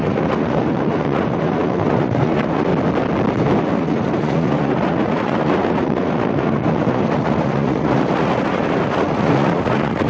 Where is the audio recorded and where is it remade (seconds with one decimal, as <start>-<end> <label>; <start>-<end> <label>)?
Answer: 0.0-2.7 remade; 2.7-3.6 recorded; 3.6-10.1 remade

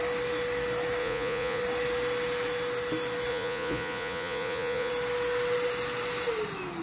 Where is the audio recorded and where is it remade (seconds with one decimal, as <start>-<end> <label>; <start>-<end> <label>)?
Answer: 0.0-1.0 recorded; 1.0-1.6 remade; 1.6-3.3 recorded; 3.3-4.9 remade; 4.9-6.8 recorded

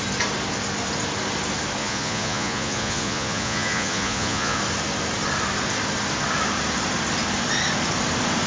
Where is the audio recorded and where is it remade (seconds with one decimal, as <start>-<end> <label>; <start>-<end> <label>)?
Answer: 0.0-1.8 recorded; 1.8-4.6 remade; 4.6-8.5 recorded